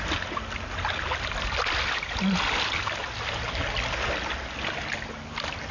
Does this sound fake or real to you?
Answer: real